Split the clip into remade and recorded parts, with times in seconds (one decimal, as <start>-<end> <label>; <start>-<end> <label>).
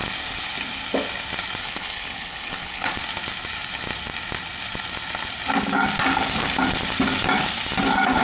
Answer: 0.0-1.6 recorded; 1.6-3.0 remade; 3.0-8.2 recorded